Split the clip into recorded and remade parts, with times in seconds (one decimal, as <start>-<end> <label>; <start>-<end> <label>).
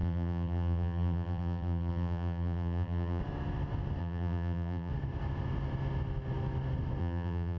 0.0-3.2 remade; 3.2-4.0 recorded; 4.0-4.9 remade; 4.9-7.0 recorded; 7.0-7.6 remade